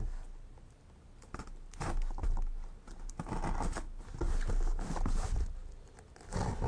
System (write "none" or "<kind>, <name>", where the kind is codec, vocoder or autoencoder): none